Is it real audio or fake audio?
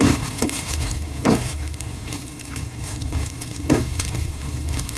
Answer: fake